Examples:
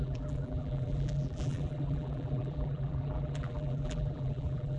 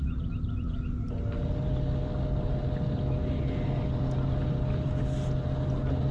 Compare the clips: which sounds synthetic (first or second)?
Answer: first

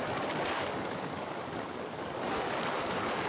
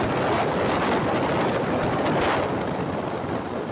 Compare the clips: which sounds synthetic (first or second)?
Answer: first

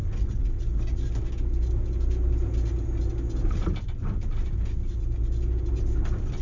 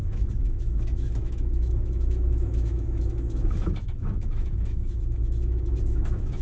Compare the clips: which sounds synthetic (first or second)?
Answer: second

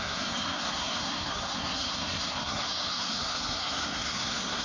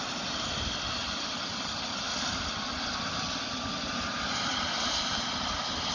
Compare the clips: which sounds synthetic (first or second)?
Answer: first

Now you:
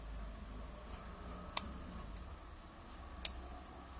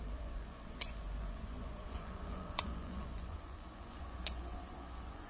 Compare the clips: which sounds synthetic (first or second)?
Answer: second